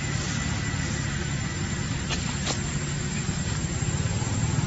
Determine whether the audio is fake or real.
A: real